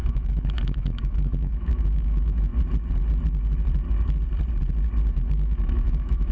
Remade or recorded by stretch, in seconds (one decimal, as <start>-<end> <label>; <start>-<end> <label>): 0.0-2.5 remade; 2.5-5.1 recorded; 5.1-6.3 remade